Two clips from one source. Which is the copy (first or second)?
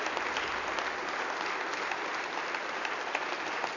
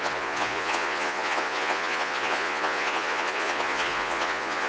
second